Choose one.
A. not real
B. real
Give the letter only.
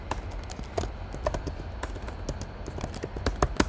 B